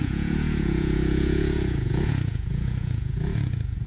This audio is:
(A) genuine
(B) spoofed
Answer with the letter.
B